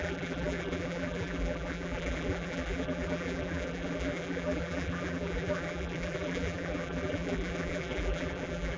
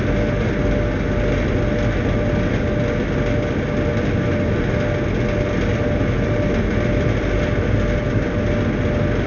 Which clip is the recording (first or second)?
second